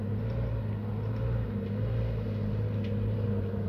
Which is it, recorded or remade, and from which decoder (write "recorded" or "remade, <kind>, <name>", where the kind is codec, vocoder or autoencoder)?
recorded